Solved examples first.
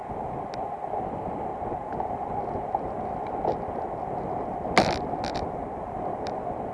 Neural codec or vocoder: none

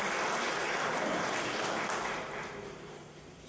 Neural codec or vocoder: none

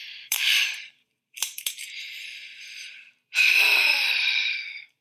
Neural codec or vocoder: vocoder, BigVGAN v2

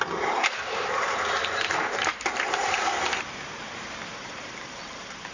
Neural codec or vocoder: vocoder, BigVGAN v2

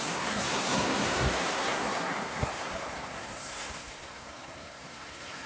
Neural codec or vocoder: codec, SNAC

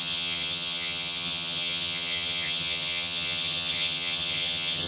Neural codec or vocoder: vocoder, HiFi-GAN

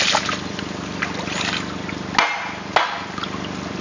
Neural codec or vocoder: none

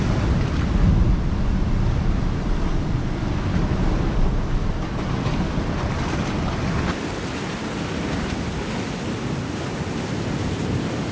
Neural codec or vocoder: none